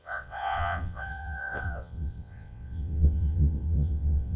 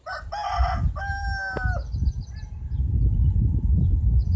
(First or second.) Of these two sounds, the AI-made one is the first